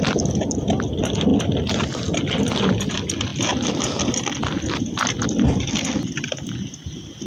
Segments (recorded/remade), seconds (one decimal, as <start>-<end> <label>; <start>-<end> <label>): 0.0-7.3 recorded